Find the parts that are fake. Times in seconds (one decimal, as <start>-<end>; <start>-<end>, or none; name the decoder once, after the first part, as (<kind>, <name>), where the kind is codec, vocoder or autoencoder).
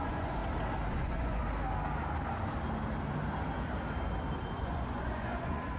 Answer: 0.0-0.4 (vocoder, Vocos); 0.9-1.4; 4.6-5.8